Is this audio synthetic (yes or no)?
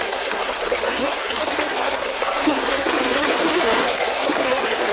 yes